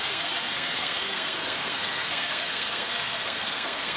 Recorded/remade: remade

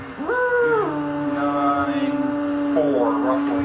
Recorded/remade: recorded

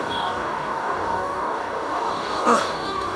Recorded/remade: remade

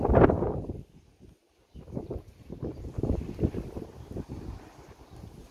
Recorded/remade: recorded